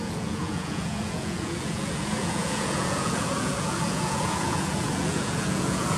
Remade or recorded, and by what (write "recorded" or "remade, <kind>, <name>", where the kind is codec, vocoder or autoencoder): remade, vocoder, Vocos